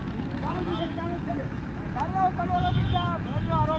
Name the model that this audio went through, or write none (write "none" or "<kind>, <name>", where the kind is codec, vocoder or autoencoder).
autoencoder, DAC-VAE